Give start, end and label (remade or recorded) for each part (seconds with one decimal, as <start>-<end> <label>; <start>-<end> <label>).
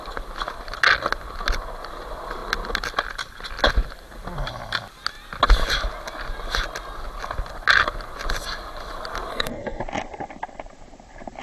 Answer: 0.0-9.3 recorded; 9.3-9.8 remade; 9.8-11.4 recorded